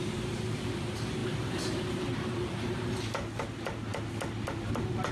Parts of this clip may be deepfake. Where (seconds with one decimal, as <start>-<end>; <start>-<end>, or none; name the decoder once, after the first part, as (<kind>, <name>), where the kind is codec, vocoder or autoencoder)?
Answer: none